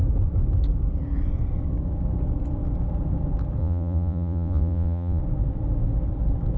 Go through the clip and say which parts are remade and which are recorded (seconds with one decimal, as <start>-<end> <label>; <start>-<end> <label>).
0.0-3.6 recorded; 3.6-5.2 remade; 5.2-6.6 recorded